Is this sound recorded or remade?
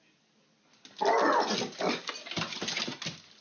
recorded